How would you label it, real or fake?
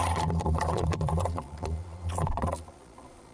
fake